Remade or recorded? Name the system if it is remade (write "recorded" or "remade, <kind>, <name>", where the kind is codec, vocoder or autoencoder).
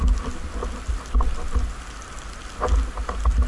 recorded